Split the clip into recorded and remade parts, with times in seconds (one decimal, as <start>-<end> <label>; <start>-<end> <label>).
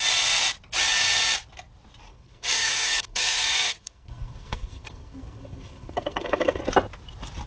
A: 0.0-2.1 recorded; 2.1-6.6 remade; 6.6-7.5 recorded